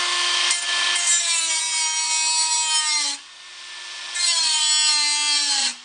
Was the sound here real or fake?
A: real